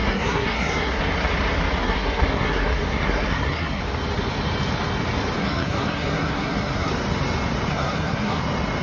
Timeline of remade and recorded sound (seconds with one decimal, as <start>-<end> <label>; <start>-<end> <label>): 0.0-1.0 remade; 1.0-1.8 recorded; 1.8-3.8 remade; 3.8-5.4 recorded; 5.4-6.9 remade; 6.9-7.7 recorded; 7.7-8.4 remade; 8.4-8.8 recorded